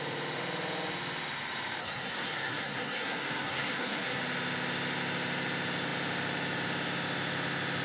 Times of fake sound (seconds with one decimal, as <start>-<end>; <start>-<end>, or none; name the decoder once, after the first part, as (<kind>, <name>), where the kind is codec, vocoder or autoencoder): 1.8-4.2 (codec, SNAC)